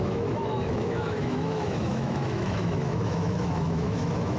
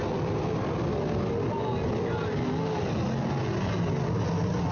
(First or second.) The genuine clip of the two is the second